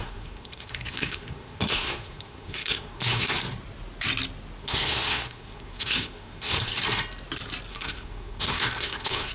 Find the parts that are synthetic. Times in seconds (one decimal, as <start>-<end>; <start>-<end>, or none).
0.0-3.3; 4.6-6.7; 7.7-9.3